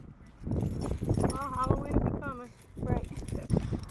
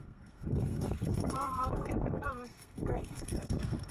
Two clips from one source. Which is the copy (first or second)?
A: second